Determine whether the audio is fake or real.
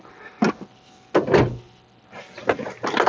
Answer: real